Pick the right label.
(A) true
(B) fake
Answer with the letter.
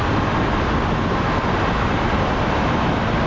A